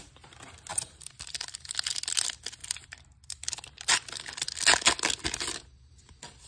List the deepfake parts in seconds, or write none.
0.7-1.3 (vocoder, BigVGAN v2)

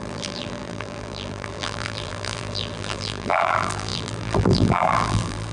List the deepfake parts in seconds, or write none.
0.0-5.5 (vocoder, BigVGAN v2)